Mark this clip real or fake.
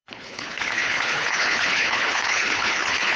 fake